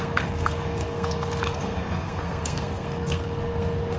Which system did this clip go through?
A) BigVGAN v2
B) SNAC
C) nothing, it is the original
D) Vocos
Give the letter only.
B